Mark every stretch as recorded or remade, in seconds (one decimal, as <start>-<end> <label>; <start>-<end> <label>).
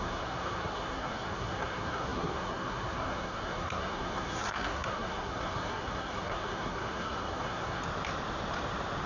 0.0-7.8 remade; 7.8-9.1 recorded